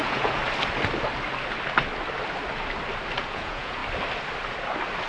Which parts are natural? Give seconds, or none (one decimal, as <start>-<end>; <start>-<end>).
0.4-3.2; 3.8-5.1